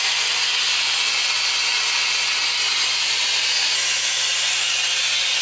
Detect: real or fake real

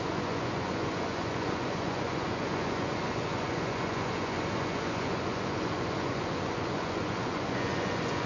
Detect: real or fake fake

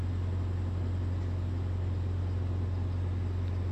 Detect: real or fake real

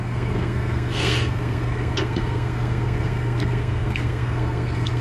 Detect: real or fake fake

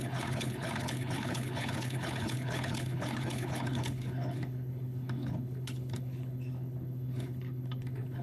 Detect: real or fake fake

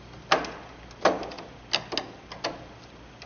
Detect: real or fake real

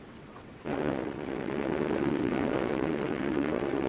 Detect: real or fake fake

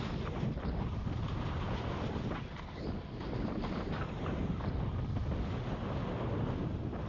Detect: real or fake real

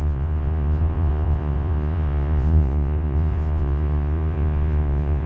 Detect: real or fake fake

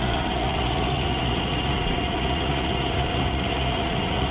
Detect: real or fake fake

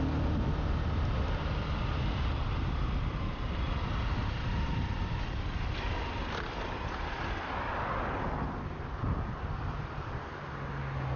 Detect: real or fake real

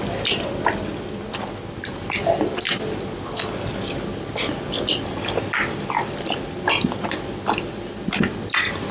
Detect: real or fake real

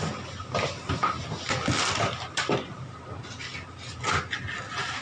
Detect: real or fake real